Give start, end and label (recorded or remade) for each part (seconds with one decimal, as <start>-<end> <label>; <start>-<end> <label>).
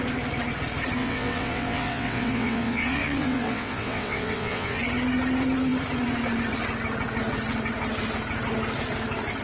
0.0-1.0 recorded; 1.0-4.8 remade; 4.8-9.4 recorded